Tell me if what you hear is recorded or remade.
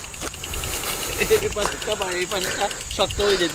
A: recorded